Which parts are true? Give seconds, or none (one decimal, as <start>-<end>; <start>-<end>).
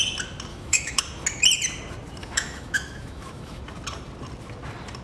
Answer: 0.0-0.5; 1.0-2.2; 3.6-5.0